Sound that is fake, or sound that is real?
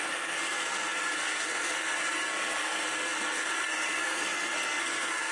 fake